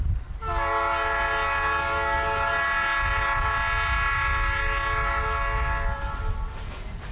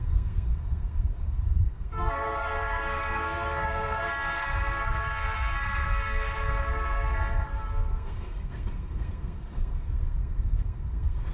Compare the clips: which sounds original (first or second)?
first